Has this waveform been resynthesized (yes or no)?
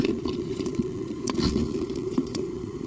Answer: yes